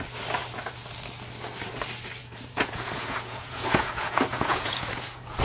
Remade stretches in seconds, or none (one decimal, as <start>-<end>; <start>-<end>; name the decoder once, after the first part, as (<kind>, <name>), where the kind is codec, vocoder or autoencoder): 2.2-5.4 (vocoder, Vocos)